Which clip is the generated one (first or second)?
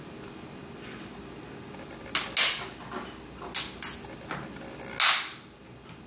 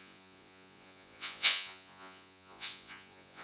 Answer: second